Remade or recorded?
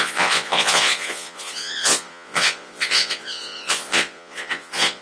remade